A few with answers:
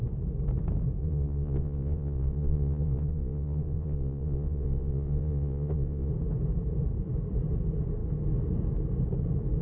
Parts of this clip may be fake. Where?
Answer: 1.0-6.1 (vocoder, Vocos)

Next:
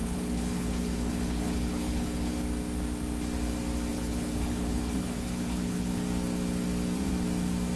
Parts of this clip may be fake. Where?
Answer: 0.0-2.3 (codec, HILCodec); 3.9-5.9

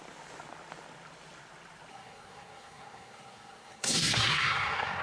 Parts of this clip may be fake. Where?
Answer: 1.9-5.0 (codec, SNAC)

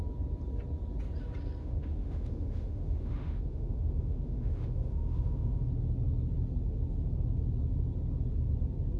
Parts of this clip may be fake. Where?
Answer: 1.6-5.7 (autoencoder, DAC-VAE)

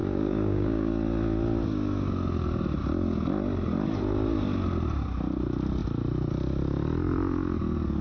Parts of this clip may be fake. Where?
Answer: 0.0-0.9 (codec, DAC)